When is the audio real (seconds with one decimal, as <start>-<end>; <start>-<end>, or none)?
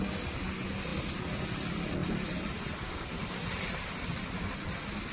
0.0-2.0; 4.0-5.1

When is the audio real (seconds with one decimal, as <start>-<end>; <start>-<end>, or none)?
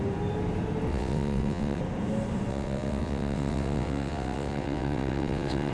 0.0-0.9; 1.8-2.5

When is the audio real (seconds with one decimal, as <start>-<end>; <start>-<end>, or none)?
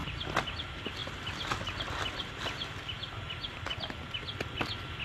0.0-5.0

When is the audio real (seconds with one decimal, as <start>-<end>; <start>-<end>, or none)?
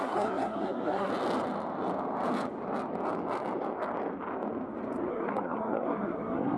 1.1-5.1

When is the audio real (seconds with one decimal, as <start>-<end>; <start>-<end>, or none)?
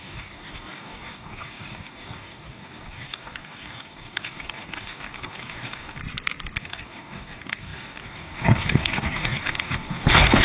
6.0-6.6